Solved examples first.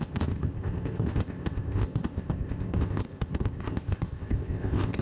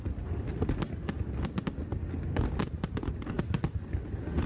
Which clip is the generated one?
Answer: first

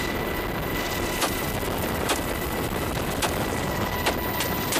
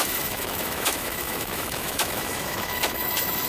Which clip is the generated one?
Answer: second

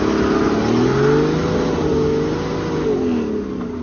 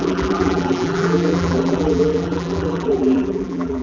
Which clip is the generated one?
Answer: second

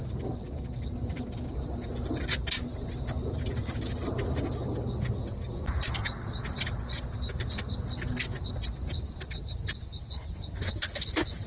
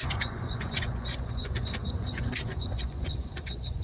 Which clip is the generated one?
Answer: second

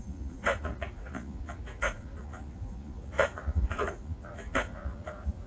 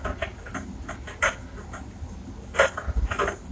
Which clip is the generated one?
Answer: first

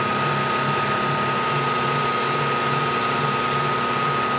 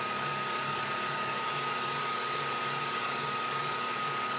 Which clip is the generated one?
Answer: second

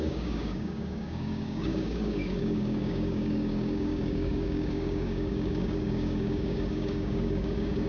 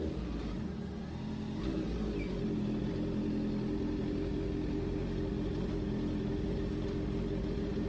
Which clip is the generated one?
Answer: first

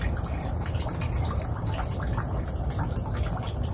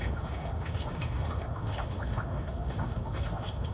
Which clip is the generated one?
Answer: second